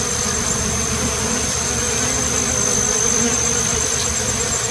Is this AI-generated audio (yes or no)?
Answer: no